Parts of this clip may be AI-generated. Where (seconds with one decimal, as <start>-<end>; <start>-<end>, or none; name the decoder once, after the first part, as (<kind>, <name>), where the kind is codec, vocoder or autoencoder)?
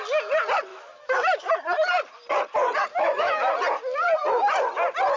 0.7-1.5 (autoencoder, DAC-VAE); 2.9-3.5